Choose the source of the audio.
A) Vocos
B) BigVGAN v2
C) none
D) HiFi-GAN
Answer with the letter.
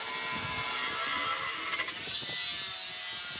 C